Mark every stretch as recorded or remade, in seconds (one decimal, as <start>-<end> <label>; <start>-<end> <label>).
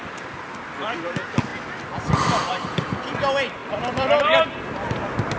0.0-3.6 recorded; 3.6-4.6 remade; 4.6-5.4 recorded